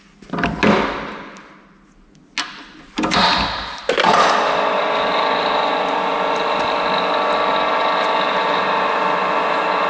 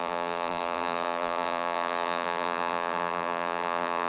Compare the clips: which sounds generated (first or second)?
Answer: second